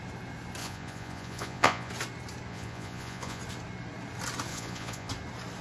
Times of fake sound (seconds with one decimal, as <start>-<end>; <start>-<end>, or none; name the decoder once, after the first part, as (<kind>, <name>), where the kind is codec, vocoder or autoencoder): 0.6-1.9 (vocoder, Vocos); 2.5-3.4; 4.5-5.1